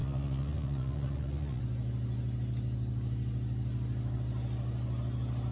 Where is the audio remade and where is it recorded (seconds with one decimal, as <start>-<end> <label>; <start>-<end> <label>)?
0.0-1.6 remade; 1.6-5.5 recorded